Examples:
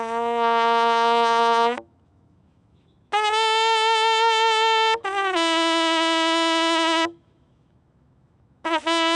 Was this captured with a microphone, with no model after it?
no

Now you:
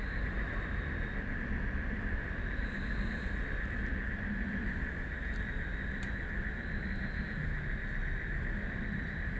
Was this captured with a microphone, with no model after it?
yes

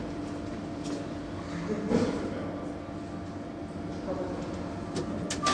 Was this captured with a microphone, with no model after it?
yes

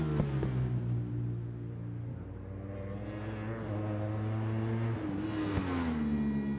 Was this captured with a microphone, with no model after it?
yes